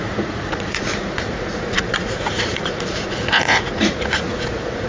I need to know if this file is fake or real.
fake